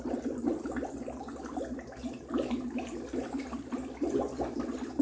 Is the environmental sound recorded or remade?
recorded